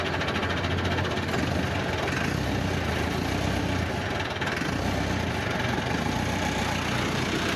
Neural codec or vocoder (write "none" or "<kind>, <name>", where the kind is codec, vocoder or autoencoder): none